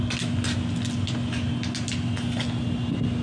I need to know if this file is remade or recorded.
recorded